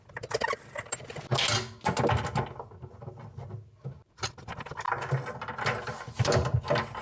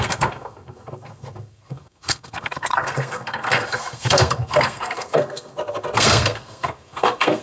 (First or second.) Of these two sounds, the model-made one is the second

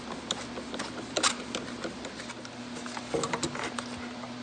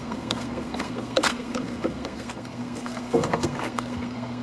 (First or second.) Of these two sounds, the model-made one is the second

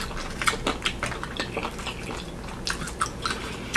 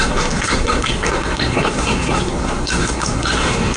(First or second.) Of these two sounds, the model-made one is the second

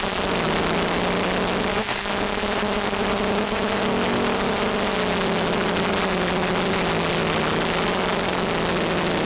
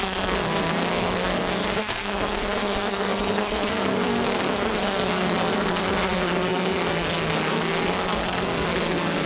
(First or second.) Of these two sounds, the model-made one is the second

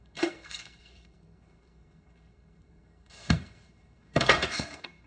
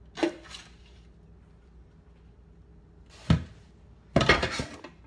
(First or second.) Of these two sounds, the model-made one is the first